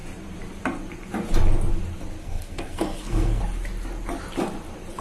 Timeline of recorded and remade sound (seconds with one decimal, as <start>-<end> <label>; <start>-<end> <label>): 0.0-2.2 recorded; 2.2-3.4 remade; 3.4-5.0 recorded